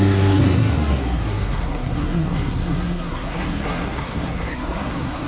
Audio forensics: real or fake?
fake